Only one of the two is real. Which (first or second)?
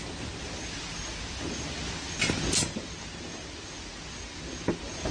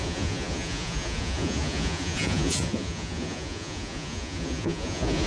first